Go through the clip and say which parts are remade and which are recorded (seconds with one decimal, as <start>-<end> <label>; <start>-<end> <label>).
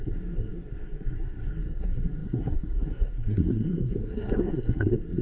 0.0-5.2 remade